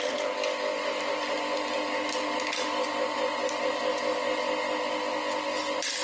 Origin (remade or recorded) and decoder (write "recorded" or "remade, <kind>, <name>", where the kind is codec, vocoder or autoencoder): recorded